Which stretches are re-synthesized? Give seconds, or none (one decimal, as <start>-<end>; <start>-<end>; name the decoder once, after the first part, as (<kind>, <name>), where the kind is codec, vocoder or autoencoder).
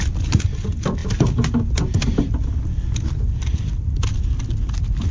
none